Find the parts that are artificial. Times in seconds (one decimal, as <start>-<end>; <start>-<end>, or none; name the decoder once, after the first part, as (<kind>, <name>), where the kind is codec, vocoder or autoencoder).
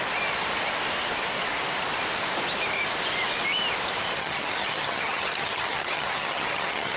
4.2-7.0 (vocoder, HiFi-GAN)